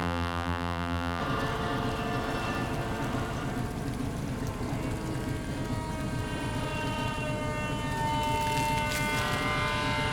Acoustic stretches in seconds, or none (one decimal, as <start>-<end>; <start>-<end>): 1.2-10.1